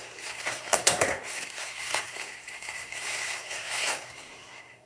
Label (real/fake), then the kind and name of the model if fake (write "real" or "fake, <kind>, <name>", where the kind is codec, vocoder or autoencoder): fake, codec, SNAC